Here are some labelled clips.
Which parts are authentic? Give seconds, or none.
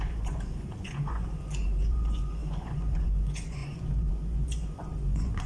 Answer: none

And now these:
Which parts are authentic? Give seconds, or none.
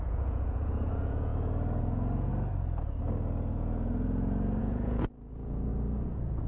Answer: 1.3-1.8; 2.3-4.6